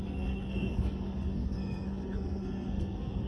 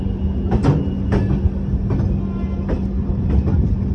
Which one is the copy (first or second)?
first